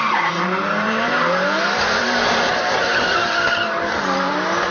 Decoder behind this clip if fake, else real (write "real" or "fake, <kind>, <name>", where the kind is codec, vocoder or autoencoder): fake, vocoder, BigVGAN v2